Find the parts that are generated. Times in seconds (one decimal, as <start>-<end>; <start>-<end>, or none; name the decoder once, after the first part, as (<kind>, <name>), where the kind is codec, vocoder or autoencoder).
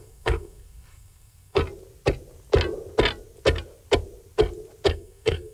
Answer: 0.0-1.6 (codec, SNAC); 4.9-5.5